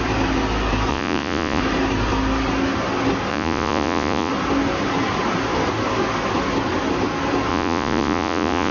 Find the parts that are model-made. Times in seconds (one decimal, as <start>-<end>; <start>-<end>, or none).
0.9-1.6; 3.3-4.3; 7.5-8.7